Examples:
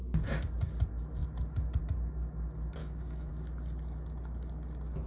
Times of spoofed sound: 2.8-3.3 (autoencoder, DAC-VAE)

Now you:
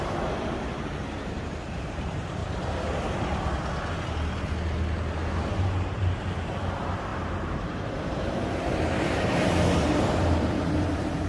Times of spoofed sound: 0.0-2.4 (vocoder, BigVGAN v2); 5.6-11.3

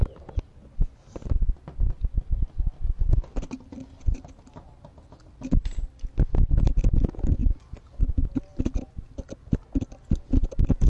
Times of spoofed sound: none

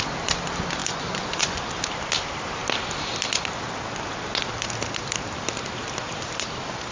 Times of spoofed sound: 0.8-1.6 (vocoder, Vocos)

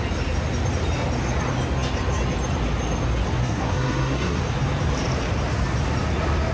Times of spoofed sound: 3.4-4.4 (codec, SNAC)

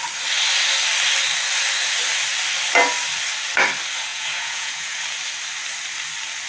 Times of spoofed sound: 4.1-5.0 (vocoder, Vocos)